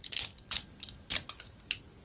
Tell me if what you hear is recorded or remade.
recorded